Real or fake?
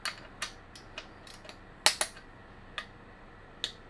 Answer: real